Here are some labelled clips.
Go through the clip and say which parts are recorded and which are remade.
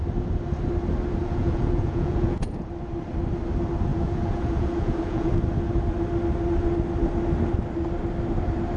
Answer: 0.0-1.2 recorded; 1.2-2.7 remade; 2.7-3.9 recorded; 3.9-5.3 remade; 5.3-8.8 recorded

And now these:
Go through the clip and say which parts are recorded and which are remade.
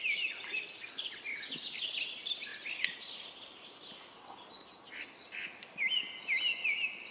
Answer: 0.0-7.1 recorded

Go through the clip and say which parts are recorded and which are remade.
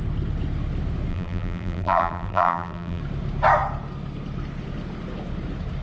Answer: 0.0-1.1 recorded; 1.1-3.0 remade; 3.0-5.8 recorded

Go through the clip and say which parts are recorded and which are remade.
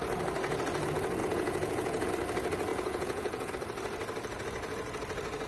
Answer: 0.0-1.2 recorded; 1.2-2.1 remade; 2.1-2.7 recorded; 2.7-3.5 remade; 3.5-5.5 recorded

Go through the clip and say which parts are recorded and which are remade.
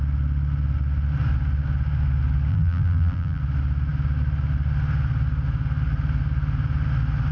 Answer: 0.0-2.5 recorded; 2.5-3.4 remade; 3.4-7.3 recorded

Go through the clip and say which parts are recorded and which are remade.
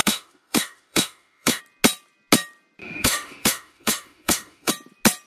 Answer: 0.0-1.6 remade; 1.6-2.8 recorded; 2.8-4.7 remade; 4.7-5.3 recorded